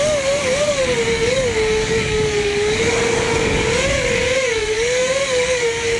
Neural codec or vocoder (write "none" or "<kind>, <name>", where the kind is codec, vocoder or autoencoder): codec, DAC